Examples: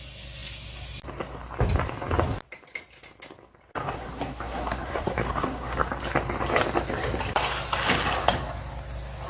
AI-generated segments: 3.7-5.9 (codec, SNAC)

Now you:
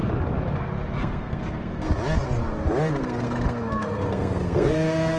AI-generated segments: 1.0-1.9 (codec, SNAC); 3.0-5.2

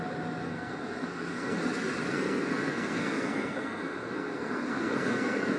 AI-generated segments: 0.4-1.6 (codec, SNAC); 2.1-5.6

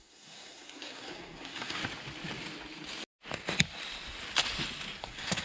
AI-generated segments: 0.0-1.8 (codec, SNAC); 5.0-5.4

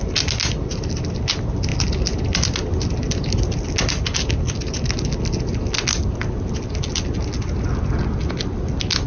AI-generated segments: none

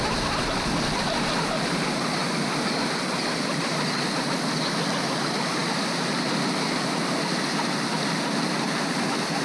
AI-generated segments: none

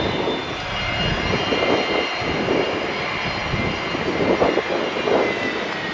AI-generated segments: none

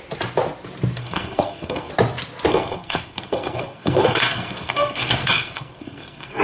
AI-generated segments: 1.0-1.9 (codec, SNAC); 2.5-6.4